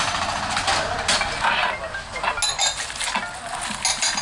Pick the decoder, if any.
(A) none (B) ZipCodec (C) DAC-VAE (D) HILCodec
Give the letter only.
A